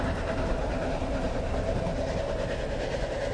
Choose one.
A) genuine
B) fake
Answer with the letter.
A